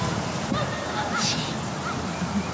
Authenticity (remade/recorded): recorded